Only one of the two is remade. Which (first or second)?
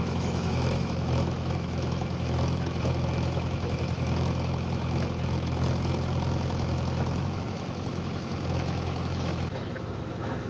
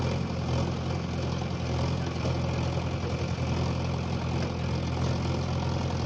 first